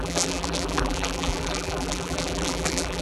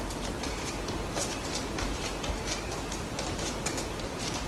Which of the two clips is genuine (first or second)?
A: second